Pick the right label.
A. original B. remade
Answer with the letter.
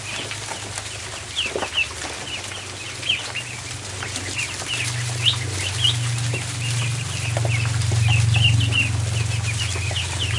A